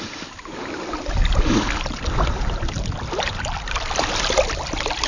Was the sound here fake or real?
real